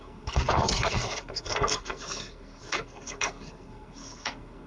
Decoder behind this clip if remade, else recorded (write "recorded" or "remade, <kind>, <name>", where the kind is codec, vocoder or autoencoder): remade, codec, SNAC